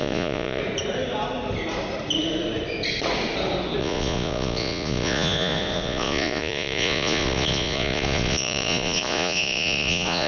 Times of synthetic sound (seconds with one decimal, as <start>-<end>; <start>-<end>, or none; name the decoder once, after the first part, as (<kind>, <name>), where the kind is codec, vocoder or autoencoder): 0.0-0.6 (vocoder, Vocos); 3.8-10.3